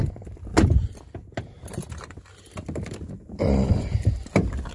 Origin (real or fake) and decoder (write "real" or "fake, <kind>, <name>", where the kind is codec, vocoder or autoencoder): real